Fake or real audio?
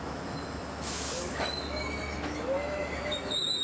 fake